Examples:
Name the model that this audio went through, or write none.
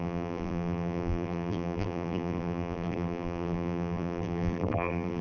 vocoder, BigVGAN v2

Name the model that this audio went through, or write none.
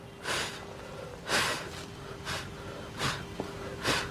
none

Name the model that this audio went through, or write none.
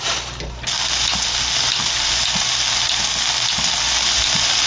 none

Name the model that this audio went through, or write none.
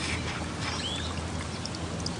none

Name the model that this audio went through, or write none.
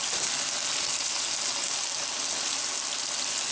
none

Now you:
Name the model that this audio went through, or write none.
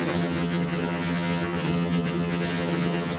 vocoder, HiFi-GAN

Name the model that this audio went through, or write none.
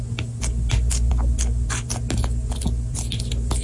none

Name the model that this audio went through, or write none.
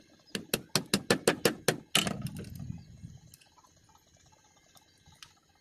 none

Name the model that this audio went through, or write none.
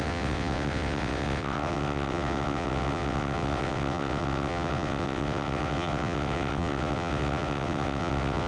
vocoder, WaveNeXt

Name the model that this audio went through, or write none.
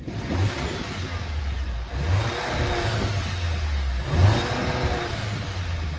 none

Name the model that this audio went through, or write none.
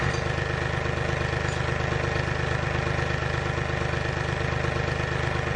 none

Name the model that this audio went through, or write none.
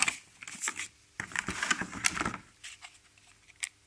none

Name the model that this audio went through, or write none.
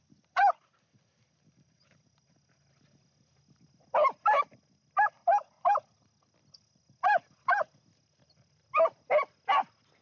none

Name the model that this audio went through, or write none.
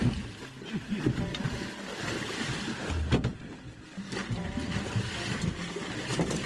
none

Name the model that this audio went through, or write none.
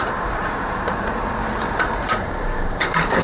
vocoder, BigVGAN v2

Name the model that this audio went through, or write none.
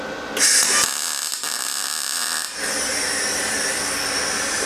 none